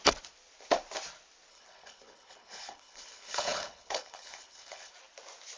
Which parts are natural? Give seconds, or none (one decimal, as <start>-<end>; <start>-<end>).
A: 0.0-1.5; 4.9-5.6

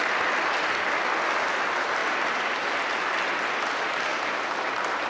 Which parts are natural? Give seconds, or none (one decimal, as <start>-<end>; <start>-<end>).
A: 0.0-5.1

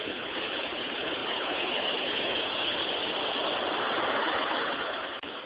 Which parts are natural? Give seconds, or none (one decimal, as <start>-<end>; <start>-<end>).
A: 2.8-4.1

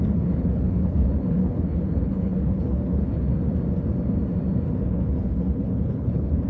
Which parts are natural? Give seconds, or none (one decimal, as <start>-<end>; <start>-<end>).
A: 3.3-4.7

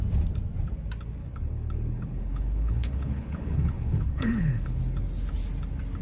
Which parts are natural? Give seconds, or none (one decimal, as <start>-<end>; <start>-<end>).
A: 0.0-1.2; 4.8-6.0

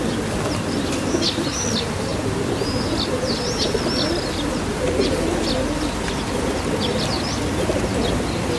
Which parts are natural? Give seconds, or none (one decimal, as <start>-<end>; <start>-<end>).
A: 0.0-8.6

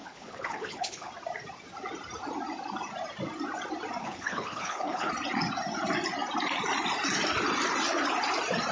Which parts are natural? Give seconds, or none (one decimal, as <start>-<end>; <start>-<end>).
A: 1.1-4.0; 5.1-8.7